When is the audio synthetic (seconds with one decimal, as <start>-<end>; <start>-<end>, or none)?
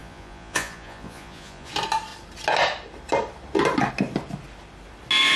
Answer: 0.0-1.7